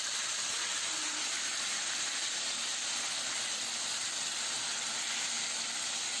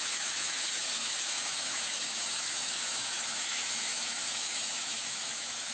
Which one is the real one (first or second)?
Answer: first